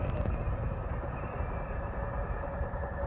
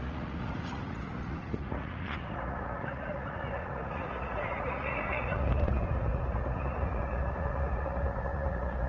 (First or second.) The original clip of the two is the first